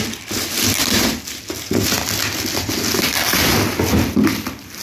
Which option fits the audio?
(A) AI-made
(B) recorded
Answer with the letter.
B